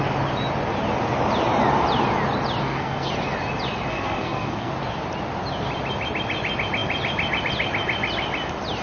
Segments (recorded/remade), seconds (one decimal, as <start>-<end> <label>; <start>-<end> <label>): 0.0-2.6 recorded; 2.6-3.1 remade; 3.1-3.9 recorded; 3.9-4.7 remade; 4.7-8.8 recorded